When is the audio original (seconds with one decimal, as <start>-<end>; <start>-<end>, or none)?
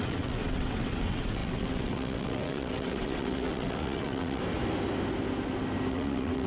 4.4-5.9